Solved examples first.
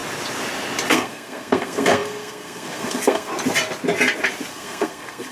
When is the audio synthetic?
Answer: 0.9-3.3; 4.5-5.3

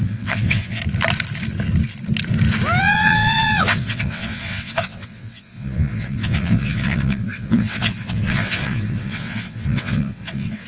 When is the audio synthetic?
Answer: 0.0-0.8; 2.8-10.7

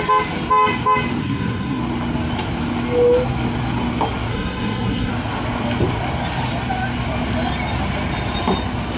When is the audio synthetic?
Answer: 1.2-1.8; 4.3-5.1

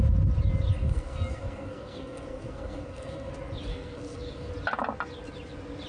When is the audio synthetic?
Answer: 0.8-3.3; 3.7-4.5

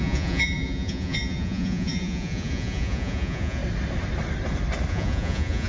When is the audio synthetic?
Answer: 0.0-3.6; 4.9-5.7